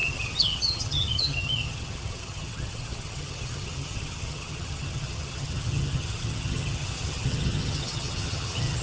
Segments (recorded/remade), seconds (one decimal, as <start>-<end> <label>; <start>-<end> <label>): 0.0-8.8 remade